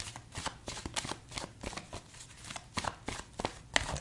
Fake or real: real